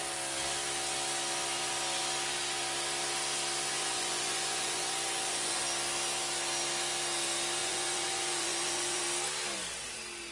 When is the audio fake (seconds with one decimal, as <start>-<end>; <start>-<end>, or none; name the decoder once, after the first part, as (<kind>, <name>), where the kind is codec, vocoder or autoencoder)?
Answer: 3.7-5.6 (vocoder, Vocos); 7.6-9.0